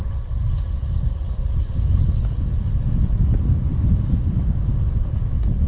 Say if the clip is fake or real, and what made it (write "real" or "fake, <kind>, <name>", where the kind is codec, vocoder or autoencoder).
real